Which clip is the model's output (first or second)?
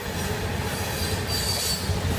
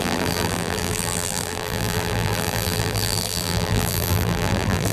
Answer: second